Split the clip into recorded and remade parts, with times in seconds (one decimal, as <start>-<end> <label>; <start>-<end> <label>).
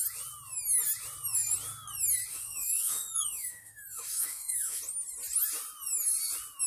0.0-2.3 recorded; 2.3-4.8 remade; 4.8-6.7 recorded